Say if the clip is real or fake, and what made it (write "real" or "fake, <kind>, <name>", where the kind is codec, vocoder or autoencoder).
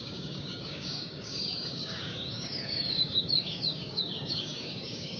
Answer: fake, codec, DAC